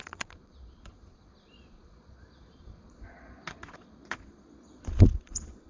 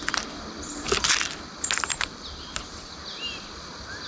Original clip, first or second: second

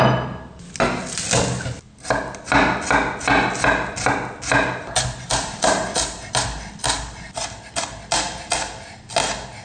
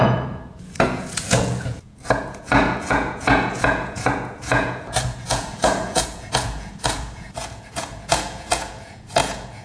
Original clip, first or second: first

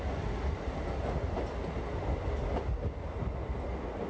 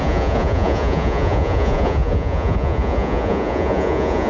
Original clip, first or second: first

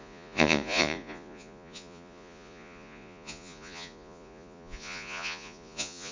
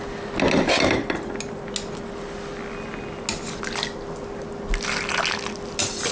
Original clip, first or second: second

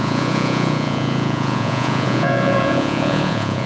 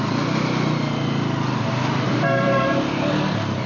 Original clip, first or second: second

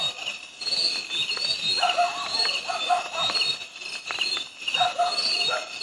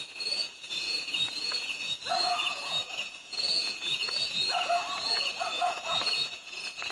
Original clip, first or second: first